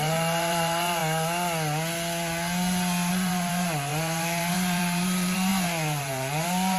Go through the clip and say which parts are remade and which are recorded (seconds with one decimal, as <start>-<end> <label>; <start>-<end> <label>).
0.0-1.0 remade; 1.0-3.1 recorded; 3.1-6.8 remade